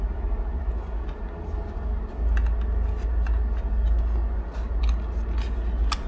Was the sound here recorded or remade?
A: recorded